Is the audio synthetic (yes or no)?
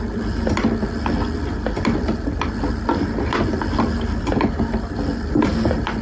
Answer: no